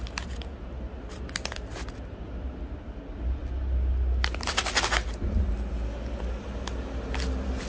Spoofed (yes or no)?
no